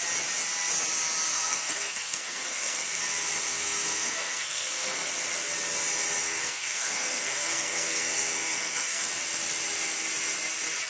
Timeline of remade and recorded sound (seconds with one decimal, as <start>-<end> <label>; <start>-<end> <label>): 0.0-1.3 recorded; 1.3-3.0 remade; 3.0-3.5 recorded; 3.5-5.1 remade; 5.1-6.2 recorded; 6.2-9.1 remade; 9.1-10.9 recorded